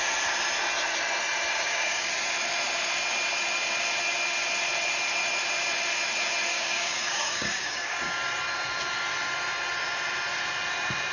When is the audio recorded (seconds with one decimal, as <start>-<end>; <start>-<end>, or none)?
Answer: 0.0-1.5; 2.1-6.5; 8.1-11.1